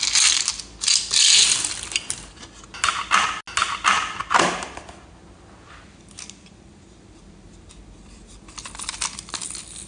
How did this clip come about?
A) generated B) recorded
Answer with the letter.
B